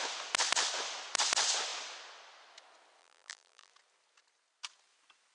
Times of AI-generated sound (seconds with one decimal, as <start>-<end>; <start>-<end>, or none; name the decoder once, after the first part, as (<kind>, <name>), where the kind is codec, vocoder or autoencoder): 3.0-3.7 (vocoder, BigVGAN v2)